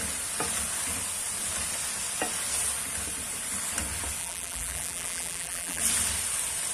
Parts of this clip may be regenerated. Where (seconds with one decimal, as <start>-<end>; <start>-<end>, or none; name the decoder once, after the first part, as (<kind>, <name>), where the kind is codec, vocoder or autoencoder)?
4.2-5.8 (vocoder, BigVGAN v2)